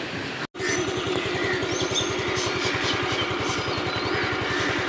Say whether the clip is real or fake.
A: real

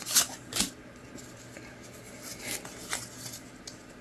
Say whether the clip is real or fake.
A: real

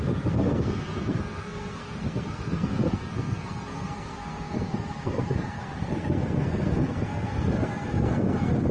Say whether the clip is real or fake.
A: fake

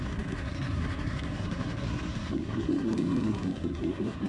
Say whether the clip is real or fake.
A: fake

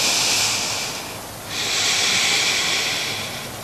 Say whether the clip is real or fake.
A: real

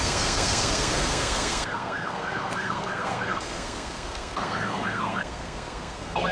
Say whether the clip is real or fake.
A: fake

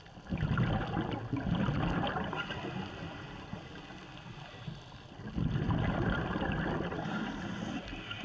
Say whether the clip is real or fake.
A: real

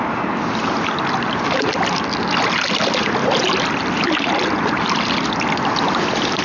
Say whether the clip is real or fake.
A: real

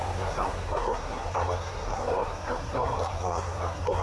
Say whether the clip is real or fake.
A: fake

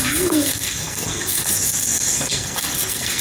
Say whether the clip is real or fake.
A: fake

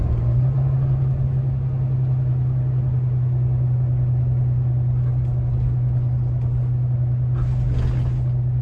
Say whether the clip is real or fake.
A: real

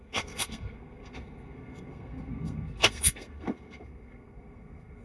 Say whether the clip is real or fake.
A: fake